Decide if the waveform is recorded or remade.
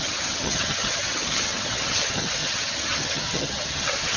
remade